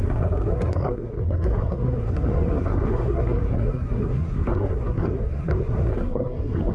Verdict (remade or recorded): remade